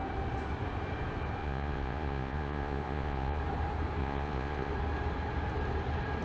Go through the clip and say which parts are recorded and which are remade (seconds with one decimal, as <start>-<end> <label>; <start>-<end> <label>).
0.0-1.4 recorded; 1.4-3.4 remade; 3.4-4.0 recorded; 4.0-4.7 remade; 4.7-6.2 recorded